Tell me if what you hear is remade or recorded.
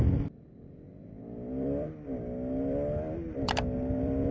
remade